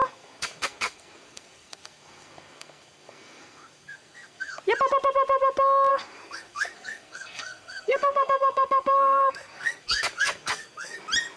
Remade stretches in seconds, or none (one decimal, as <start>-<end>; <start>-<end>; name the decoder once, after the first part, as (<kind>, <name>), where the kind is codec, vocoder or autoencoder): 0.0-4.6 (codec, SNAC); 5.9-11.0